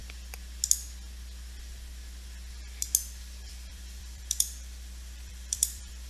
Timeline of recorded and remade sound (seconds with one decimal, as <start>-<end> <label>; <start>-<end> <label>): 0.0-3.5 recorded; 3.5-6.1 remade